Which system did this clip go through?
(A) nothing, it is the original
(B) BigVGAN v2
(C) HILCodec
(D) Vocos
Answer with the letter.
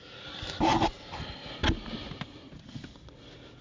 A